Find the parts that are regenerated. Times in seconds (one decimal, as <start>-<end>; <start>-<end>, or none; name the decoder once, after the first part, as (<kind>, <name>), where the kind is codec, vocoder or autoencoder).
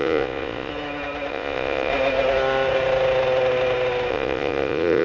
0.0-0.7 (vocoder, Vocos); 1.3-1.9; 4.1-5.0